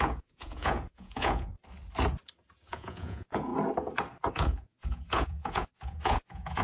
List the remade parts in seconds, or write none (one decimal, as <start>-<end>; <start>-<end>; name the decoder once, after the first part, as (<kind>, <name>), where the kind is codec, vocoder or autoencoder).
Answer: 0.0-1.5 (vocoder, Vocos); 2.7-3.5; 4.3-6.6